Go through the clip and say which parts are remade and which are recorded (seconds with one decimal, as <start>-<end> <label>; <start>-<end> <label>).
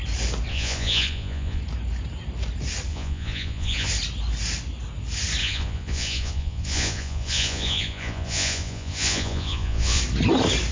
0.0-0.5 recorded; 0.5-1.6 remade; 1.6-2.9 recorded; 2.9-3.9 remade; 3.9-5.4 recorded; 5.4-10.0 remade; 10.0-10.7 recorded